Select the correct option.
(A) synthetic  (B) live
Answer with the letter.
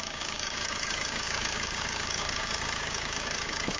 A